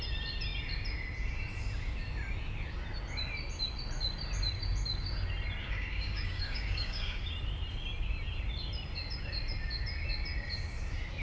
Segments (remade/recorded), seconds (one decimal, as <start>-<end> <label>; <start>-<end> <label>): 0.0-5.6 recorded; 5.6-7.3 remade; 7.3-11.2 recorded